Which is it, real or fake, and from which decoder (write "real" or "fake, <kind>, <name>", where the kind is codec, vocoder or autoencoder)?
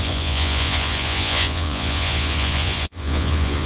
fake, vocoder, Vocos